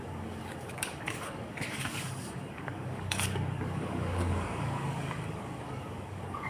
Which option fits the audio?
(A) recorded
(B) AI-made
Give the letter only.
B